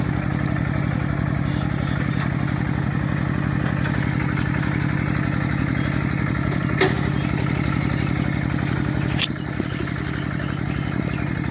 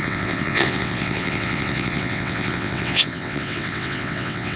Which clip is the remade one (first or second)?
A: second